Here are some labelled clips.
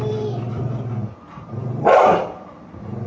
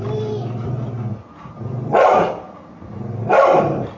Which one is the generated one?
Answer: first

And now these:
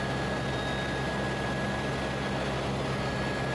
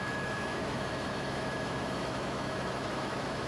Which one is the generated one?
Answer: second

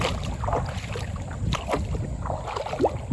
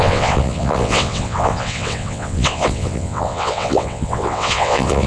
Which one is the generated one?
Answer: second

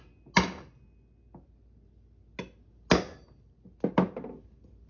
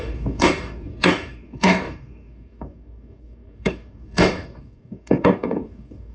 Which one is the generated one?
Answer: second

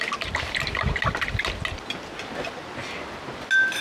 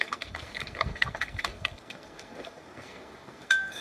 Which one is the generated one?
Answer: second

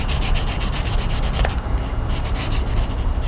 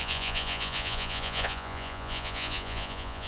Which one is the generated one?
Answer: second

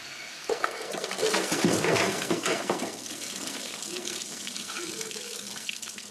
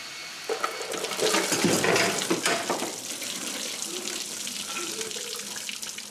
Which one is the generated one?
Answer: first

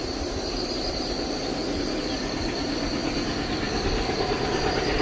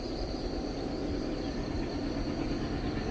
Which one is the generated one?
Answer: first